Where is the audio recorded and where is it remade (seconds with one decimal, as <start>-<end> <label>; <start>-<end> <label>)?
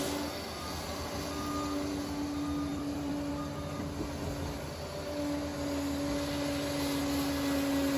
0.0-2.7 recorded; 2.7-3.3 remade; 3.3-8.0 recorded